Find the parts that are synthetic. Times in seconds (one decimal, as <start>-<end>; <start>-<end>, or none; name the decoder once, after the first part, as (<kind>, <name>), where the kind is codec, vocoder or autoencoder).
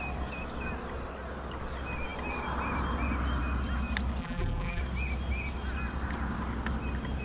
4.2-4.8 (vocoder, BigVGAN v2)